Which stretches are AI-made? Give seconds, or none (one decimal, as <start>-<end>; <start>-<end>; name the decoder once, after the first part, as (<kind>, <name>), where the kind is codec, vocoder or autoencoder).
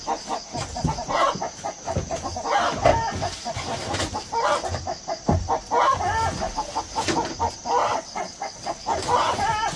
7.8-8.7 (vocoder, WaveNeXt)